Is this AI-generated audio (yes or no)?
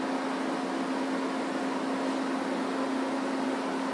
no